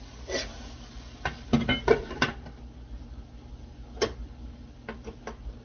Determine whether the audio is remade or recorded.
recorded